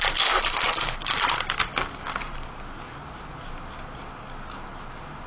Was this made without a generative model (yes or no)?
yes